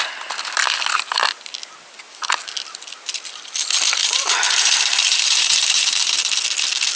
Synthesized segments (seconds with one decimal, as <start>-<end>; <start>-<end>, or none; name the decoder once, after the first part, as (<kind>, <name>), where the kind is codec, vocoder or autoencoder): 4.0-6.2 (vocoder, BigVGAN v2)